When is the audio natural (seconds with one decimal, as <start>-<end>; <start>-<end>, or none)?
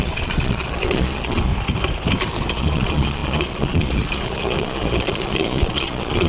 1.5-2.5